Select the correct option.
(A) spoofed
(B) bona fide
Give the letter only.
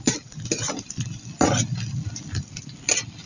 B